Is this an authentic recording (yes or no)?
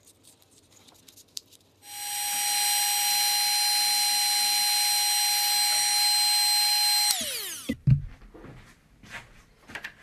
yes